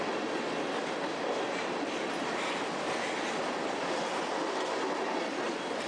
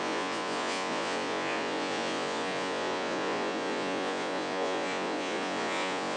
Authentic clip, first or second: first